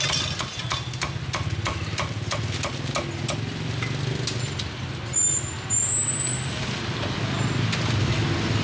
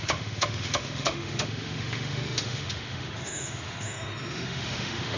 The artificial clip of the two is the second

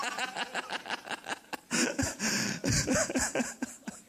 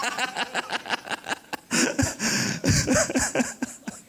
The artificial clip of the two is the second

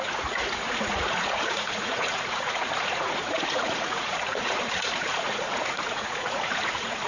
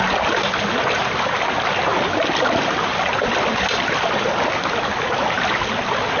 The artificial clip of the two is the first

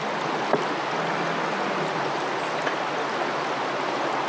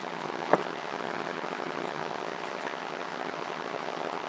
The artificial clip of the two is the second